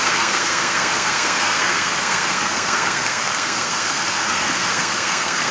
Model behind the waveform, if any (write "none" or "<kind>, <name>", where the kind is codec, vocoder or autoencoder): codec, SNAC